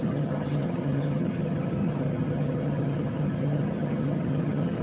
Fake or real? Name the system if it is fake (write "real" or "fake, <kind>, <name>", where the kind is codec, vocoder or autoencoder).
fake, vocoder, HiFi-GAN